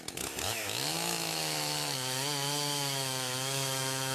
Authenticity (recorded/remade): remade